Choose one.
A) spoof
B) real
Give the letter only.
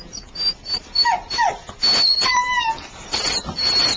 B